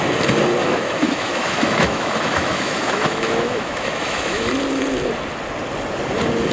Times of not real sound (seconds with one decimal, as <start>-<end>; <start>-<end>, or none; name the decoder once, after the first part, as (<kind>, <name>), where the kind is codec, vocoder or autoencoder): 0.6-4.5 (autoencoder, DAC-VAE)